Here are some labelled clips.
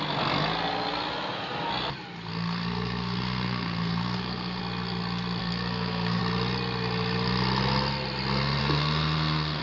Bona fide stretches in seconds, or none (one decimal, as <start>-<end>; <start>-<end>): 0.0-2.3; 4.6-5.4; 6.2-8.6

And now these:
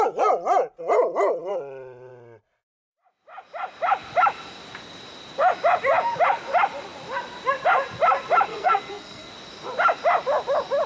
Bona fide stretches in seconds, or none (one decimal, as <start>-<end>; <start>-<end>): 0.0-8.5; 9.3-10.9

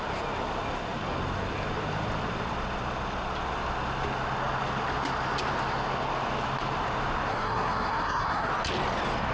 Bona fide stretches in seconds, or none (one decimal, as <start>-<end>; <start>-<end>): 0.0-7.3; 8.5-9.3